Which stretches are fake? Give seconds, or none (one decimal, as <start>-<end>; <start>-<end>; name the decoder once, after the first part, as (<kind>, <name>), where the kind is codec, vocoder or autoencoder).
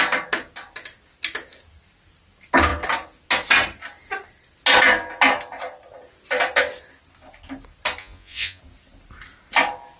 8.0-8.6 (vocoder, Vocos)